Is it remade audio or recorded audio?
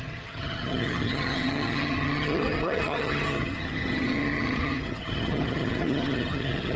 remade